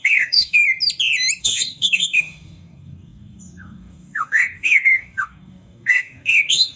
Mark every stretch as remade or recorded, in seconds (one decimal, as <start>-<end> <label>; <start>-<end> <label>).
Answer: 0.0-0.6 remade; 0.6-1.4 recorded; 1.4-6.8 remade